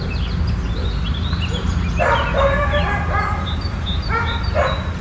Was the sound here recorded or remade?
recorded